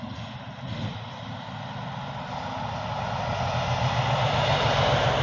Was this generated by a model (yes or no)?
no